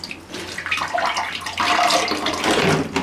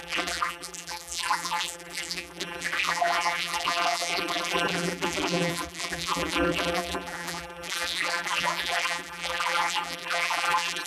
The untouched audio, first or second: first